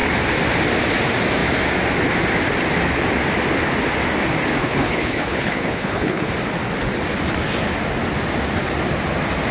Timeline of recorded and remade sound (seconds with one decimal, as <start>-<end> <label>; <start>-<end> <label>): 0.0-4.6 recorded; 4.6-6.3 remade; 6.3-9.5 recorded